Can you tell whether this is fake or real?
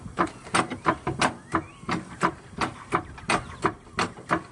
real